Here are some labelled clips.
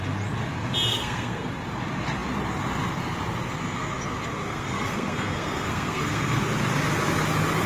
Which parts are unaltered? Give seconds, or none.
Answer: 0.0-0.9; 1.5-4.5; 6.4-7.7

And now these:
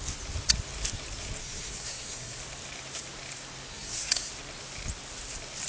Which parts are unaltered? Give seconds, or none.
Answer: 0.0-1.4; 2.4-3.7; 4.3-5.7